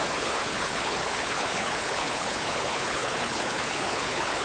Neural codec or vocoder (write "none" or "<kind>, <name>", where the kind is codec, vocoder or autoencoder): codec, HILCodec